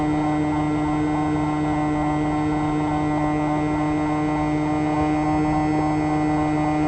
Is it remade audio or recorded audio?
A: recorded